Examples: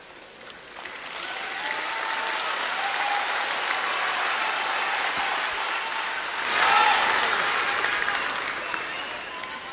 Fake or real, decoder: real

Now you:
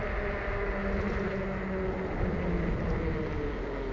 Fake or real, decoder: real